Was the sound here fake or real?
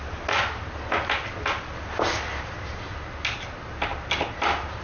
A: real